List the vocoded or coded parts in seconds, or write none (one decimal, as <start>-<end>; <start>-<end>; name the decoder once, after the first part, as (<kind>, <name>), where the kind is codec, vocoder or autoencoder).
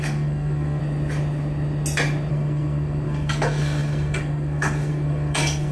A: 0.0-0.8 (codec, SNAC); 2.3-5.7